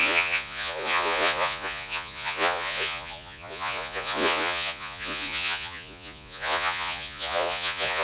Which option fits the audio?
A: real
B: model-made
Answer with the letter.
B